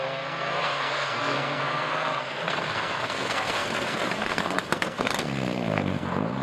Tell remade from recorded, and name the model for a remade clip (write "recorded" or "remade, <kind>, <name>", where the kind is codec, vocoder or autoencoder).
remade, codec, SNAC